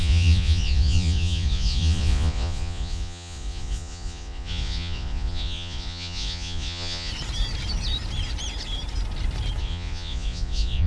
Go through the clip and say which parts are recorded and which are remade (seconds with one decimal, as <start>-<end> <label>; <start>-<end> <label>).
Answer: 0.0-7.1 remade; 7.1-9.6 recorded; 9.6-10.9 remade